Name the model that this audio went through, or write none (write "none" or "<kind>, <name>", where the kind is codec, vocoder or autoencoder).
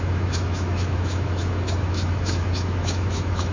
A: autoencoder, DAC-VAE